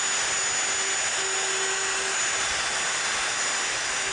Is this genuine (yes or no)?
yes